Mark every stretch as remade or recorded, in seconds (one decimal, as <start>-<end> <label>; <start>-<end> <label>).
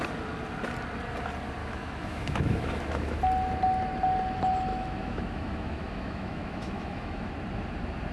0.0-1.6 recorded; 1.6-3.2 remade; 3.2-4.7 recorded; 4.7-7.3 remade; 7.3-8.1 recorded